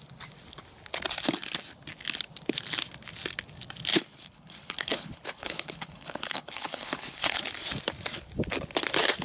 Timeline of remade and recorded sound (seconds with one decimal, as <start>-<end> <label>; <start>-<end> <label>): 0.0-3.9 recorded; 3.9-7.4 remade; 7.4-9.2 recorded